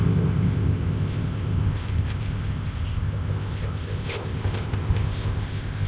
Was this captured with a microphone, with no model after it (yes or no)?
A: no